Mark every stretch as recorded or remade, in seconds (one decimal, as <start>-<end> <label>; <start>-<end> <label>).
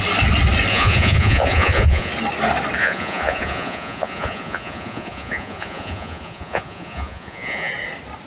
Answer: 0.0-0.7 recorded; 0.7-2.1 remade; 2.1-2.8 recorded; 2.8-7.7 remade; 7.7-8.3 recorded